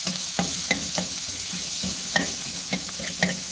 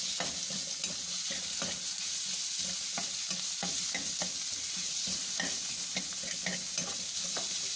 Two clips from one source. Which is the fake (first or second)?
first